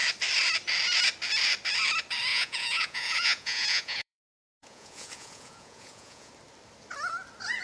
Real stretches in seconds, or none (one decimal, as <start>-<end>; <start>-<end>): 0.0-2.3; 6.3-7.6